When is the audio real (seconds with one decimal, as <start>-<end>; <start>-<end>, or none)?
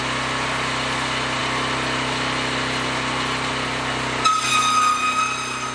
0.0-5.7